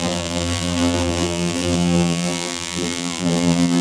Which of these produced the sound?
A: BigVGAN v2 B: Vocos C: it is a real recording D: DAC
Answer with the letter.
A